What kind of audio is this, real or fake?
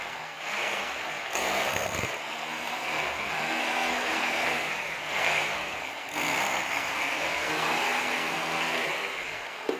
fake